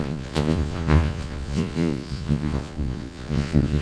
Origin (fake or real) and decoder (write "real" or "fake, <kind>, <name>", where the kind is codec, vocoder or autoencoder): fake, vocoder, Vocos